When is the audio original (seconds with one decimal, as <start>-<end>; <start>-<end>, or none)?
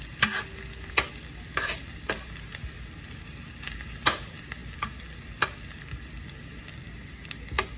0.0-7.8